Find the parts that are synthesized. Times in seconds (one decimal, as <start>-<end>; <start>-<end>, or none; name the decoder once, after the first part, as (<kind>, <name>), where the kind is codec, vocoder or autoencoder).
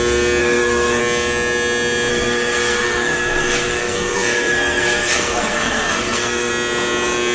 0.4-1.0 (codec, SNAC); 2.1-6.5